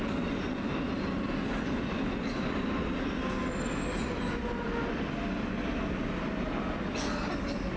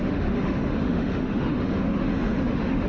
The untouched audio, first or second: first